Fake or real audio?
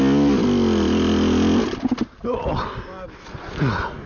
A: real